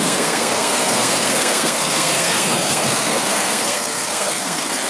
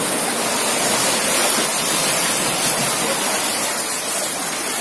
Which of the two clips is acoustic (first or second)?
second